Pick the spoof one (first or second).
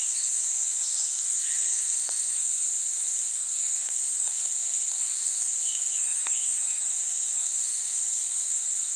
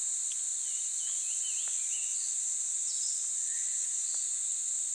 first